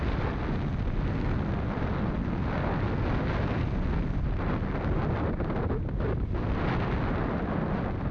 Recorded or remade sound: recorded